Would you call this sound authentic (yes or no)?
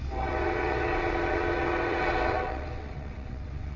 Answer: no